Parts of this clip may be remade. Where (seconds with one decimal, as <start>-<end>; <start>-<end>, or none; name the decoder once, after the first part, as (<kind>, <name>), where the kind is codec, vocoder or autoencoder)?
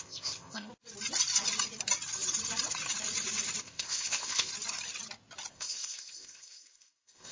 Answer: 0.0-0.7 (codec, ZipCodec); 3.6-4.5; 5.5-7.3